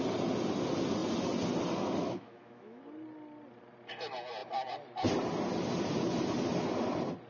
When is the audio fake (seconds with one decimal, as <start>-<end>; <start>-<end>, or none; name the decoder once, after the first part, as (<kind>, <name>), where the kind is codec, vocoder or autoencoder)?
2.0-2.8 (autoencoder, DAC-VAE)